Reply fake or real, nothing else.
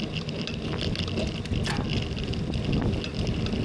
real